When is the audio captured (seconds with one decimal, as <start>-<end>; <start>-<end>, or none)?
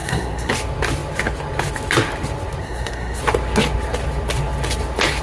0.5-2.6; 3.2-5.2